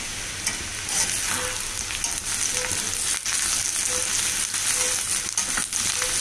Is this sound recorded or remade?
recorded